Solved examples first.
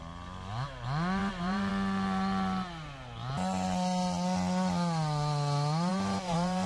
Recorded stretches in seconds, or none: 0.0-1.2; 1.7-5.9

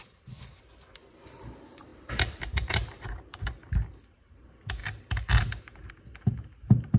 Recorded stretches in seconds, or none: 0.0-1.9; 3.4-7.0

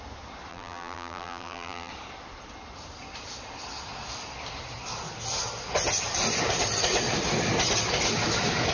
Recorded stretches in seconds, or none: 0.0-0.5; 1.9-8.7

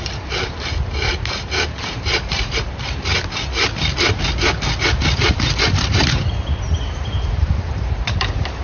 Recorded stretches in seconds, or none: 3.1-5.6